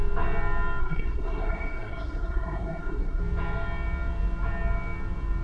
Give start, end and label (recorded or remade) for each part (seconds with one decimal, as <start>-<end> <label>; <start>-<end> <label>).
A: 0.0-0.8 recorded; 0.8-3.2 remade; 3.2-5.4 recorded